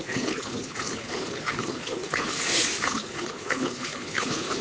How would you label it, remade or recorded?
remade